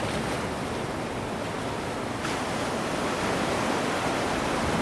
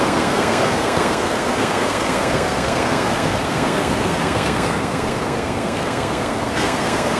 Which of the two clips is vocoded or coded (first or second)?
second